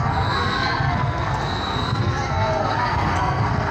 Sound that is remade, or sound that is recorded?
remade